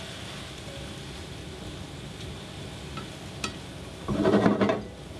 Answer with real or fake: real